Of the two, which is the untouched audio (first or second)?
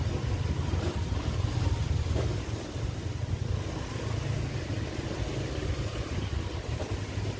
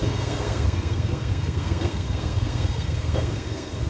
first